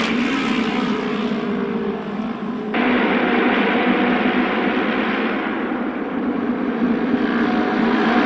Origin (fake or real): real